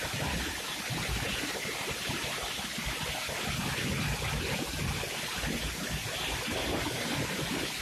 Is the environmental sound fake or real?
real